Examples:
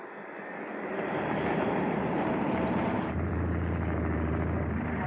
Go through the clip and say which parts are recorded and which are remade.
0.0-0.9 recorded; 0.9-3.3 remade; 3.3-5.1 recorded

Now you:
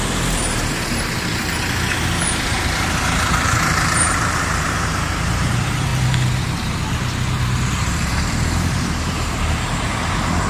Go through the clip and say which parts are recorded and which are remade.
0.0-5.9 remade; 5.9-7.4 recorded; 7.4-10.5 remade

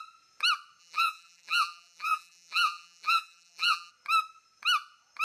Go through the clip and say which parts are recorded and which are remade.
0.0-0.8 recorded; 0.8-3.9 remade; 3.9-5.2 recorded

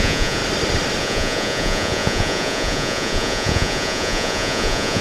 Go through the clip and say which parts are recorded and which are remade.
0.0-0.4 remade; 0.4-1.0 recorded; 1.0-5.0 remade